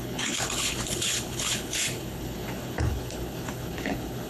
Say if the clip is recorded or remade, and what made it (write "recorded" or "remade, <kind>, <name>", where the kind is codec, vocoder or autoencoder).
remade, codec, HILCodec